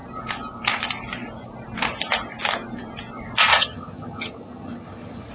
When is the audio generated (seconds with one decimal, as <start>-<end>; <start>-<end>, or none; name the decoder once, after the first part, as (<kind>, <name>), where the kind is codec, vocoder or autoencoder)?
3.5-5.3 (vocoder, HiFi-GAN)